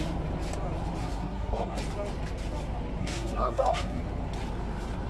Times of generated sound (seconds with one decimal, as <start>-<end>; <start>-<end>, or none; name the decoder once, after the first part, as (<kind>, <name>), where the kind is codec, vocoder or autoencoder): 1.0-1.8 (codec, SNAC); 3.0-4.0